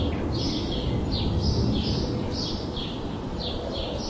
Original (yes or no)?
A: yes